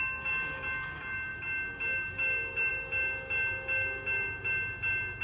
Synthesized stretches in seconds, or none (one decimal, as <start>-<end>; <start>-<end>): none